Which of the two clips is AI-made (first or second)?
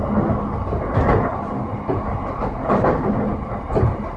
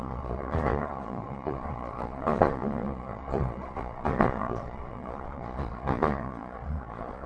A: second